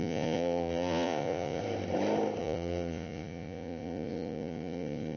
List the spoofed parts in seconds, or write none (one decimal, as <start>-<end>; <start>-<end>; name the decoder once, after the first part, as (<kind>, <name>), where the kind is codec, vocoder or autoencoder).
0.0-1.6 (vocoder, Vocos); 2.4-5.2

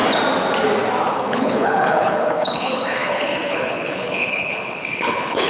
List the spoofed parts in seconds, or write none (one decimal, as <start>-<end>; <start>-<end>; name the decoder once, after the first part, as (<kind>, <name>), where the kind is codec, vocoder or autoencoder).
1.1-5.5 (codec, HILCodec)

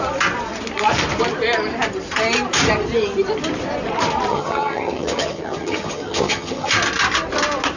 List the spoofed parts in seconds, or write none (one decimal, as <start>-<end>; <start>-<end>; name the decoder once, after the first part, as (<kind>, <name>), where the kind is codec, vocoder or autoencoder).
4.3-6.7 (vocoder, HiFi-GAN)